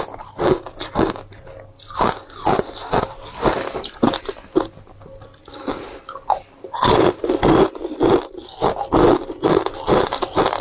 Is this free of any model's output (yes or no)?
yes